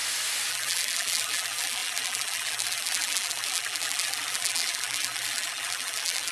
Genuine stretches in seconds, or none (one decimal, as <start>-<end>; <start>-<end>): 0.0-0.5